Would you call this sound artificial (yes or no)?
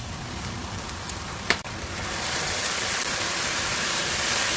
yes